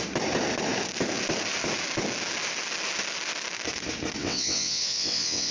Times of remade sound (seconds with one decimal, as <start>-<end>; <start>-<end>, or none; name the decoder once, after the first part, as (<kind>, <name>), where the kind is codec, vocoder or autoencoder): 4.2-5.5 (vocoder, WaveNeXt)